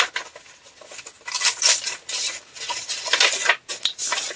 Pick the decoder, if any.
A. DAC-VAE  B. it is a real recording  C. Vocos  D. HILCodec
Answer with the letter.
B